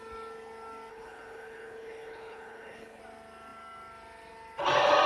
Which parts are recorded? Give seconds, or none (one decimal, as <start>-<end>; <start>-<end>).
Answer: 0.0-0.9; 3.0-5.1